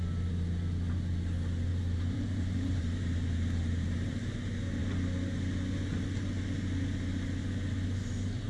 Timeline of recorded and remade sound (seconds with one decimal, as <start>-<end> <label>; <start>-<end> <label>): 0.0-1.7 recorded; 1.7-4.3 remade; 4.3-8.5 recorded